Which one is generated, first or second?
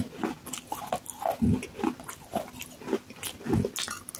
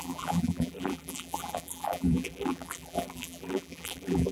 second